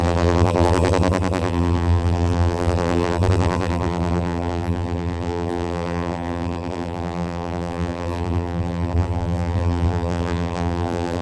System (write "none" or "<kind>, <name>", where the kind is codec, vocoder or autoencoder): vocoder, BigVGAN v2